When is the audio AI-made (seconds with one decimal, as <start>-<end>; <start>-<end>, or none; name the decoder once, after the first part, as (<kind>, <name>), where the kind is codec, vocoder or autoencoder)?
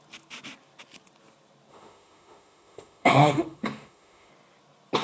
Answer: 1.7-4.3 (autoencoder, DAC-VAE)